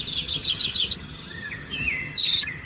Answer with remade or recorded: remade